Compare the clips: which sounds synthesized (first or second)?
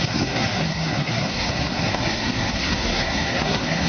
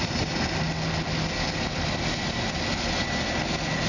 first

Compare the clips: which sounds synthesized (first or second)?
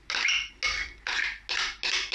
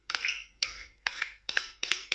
second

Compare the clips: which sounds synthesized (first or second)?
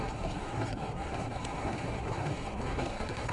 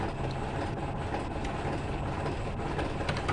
first